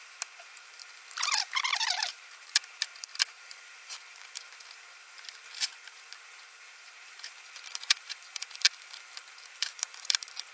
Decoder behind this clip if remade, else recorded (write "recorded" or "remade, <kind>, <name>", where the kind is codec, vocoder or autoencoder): remade, vocoder, BigVGAN v2